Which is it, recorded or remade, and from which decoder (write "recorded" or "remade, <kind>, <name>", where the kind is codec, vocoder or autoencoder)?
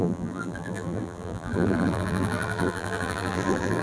remade, vocoder, BigVGAN v2